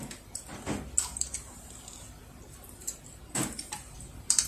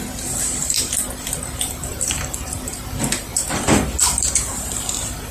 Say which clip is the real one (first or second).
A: first